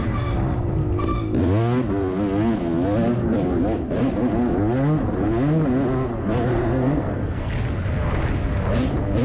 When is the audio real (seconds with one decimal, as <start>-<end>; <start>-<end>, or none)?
0.0-6.5; 7.5-9.2